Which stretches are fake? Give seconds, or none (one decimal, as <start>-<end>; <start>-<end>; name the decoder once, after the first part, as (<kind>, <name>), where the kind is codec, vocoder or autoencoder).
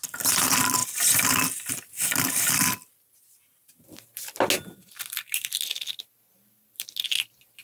none